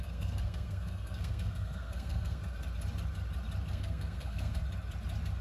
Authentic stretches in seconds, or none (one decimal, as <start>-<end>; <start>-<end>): 2.4-3.7; 4.6-5.4